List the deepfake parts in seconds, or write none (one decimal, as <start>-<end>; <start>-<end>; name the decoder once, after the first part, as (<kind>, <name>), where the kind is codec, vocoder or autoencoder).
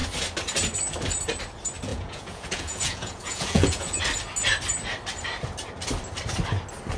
1.9-4.0 (vocoder, Vocos)